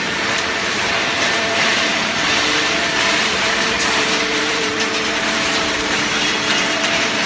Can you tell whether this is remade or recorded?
remade